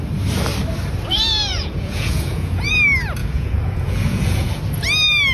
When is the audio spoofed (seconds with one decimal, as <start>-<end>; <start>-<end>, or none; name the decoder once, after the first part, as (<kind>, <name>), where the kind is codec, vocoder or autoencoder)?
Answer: 1.5-2.7 (vocoder, Vocos); 3.2-4.6